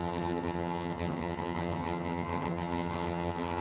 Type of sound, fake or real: fake